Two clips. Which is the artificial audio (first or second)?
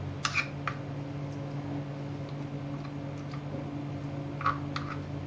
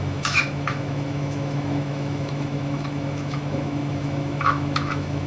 second